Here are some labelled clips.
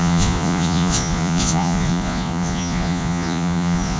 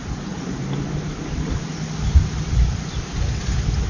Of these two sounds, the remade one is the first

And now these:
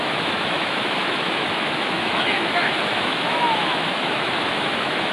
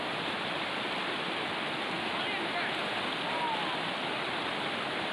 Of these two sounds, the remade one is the first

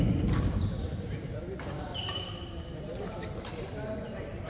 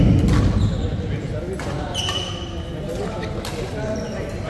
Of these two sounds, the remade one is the first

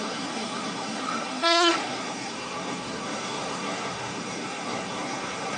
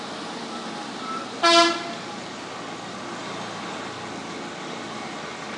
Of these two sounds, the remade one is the first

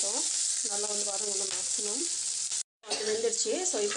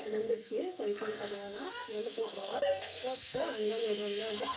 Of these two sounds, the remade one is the second